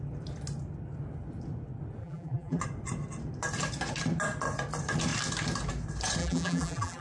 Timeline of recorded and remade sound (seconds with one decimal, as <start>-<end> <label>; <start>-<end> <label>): 0.0-2.0 recorded; 2.0-2.6 remade; 2.6-6.2 recorded; 6.2-7.0 remade